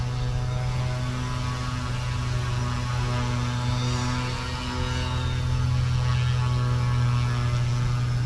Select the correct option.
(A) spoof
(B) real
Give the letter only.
B